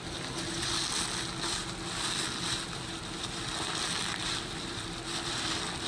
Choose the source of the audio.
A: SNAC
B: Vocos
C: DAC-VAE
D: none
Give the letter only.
D